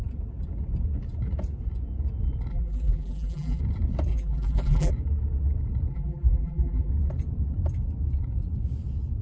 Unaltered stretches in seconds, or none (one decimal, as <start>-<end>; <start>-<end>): 0.0-2.5; 3.6-4.1; 4.9-5.9; 6.9-9.2